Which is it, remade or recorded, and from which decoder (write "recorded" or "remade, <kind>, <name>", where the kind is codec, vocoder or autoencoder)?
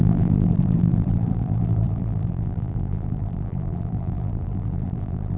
remade, vocoder, BigVGAN v2